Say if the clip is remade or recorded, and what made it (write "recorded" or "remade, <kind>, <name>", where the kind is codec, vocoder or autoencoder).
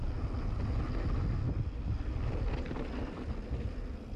recorded